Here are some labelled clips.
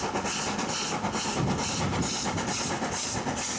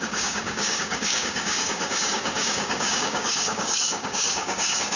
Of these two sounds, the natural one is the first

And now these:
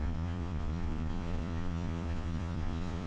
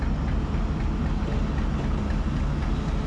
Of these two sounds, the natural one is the second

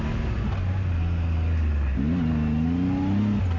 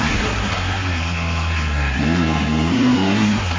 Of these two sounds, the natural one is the first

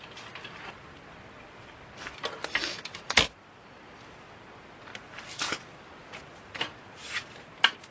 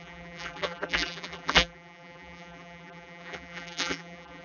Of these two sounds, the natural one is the first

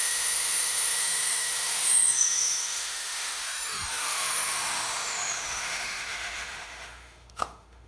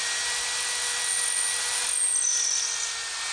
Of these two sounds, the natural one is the second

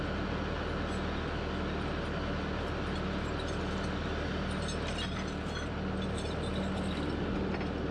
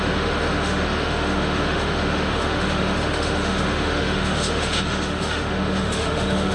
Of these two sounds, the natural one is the first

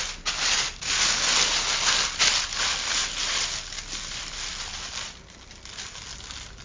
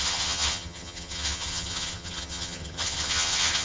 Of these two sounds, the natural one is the first